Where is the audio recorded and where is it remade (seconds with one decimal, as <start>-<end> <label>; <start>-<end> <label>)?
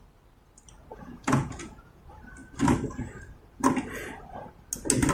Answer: 0.0-0.9 recorded; 0.9-2.0 remade; 2.0-5.1 recorded